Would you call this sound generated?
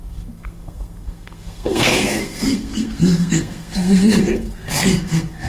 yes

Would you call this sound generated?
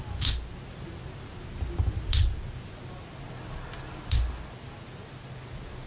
no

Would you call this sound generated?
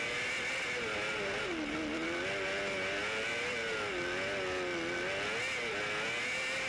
no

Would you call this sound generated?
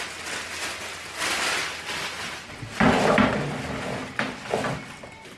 no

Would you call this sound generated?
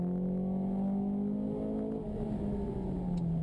no